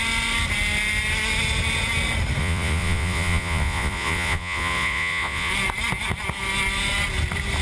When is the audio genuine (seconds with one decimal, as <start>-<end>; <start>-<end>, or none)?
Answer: 0.0-2.4; 5.5-7.6